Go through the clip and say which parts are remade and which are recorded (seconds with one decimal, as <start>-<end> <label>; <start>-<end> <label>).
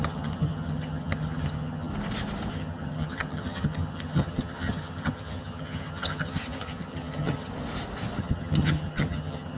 0.0-1.9 remade; 1.9-2.5 recorded; 2.5-7.5 remade; 7.5-8.2 recorded; 8.2-9.6 remade